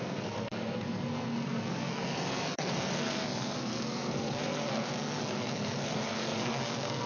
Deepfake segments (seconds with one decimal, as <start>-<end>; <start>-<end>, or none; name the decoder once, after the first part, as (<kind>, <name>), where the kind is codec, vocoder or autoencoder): 0.0-7.1 (codec, SNAC)